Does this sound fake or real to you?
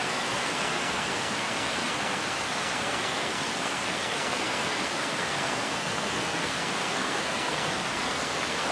fake